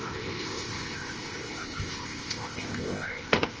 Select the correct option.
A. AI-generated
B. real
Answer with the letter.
A